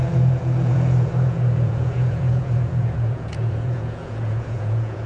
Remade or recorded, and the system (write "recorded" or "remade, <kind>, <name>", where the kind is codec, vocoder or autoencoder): remade, vocoder, Vocos